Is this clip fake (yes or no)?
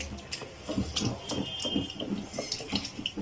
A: no